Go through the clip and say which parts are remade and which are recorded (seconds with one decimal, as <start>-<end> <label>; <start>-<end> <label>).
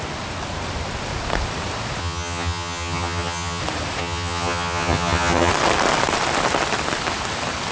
0.0-2.0 recorded; 2.0-3.6 remade; 3.6-4.0 recorded; 4.0-5.5 remade; 5.5-7.7 recorded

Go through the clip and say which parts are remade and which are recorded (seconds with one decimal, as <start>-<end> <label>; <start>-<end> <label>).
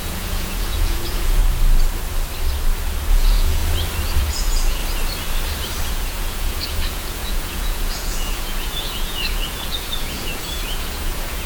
0.0-1.4 remade; 1.4-3.1 recorded; 3.1-3.6 remade; 3.6-4.2 recorded; 4.2-4.8 remade; 4.8-5.9 recorded; 5.9-11.5 remade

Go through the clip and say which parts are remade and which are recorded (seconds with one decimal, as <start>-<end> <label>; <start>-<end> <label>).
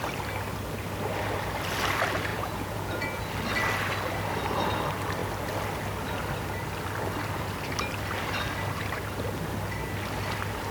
0.0-2.3 recorded; 2.3-3.2 remade; 3.2-10.7 recorded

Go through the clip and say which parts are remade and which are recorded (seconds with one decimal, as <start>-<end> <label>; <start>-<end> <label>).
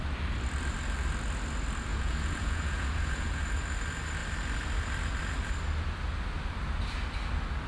0.0-1.9 recorded; 1.9-3.4 remade; 3.4-7.7 recorded